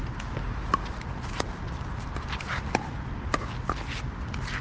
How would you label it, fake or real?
real